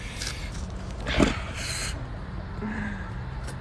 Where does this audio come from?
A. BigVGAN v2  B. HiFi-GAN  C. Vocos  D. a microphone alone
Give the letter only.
D